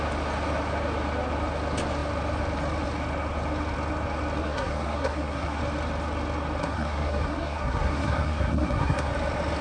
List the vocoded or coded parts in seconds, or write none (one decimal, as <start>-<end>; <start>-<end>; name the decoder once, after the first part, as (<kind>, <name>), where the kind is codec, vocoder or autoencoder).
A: 4.4-5.6 (codec, SNAC); 6.6-9.1